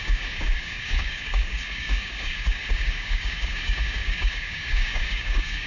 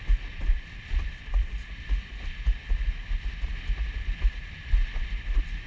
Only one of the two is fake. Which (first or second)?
first